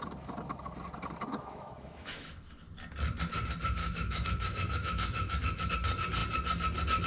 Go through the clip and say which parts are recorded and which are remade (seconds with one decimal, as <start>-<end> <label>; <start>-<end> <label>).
0.0-1.3 recorded; 1.3-2.6 remade; 2.6-3.8 recorded; 3.8-5.7 remade; 5.7-7.1 recorded